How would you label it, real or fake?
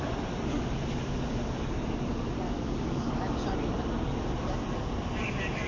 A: fake